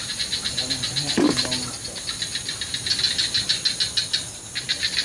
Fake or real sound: real